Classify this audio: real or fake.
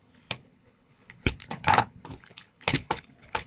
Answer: fake